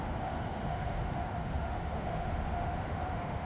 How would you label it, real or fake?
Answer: fake